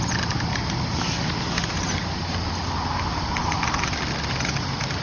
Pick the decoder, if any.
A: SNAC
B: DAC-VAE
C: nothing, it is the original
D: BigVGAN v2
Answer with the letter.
C